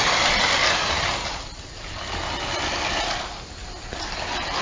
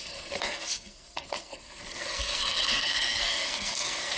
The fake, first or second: second